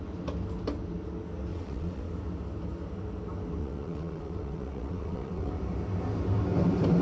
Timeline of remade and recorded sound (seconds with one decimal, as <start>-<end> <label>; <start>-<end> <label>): 0.0-1.5 recorded; 1.5-2.1 remade; 2.1-3.6 recorded; 3.6-5.5 remade; 5.5-7.0 recorded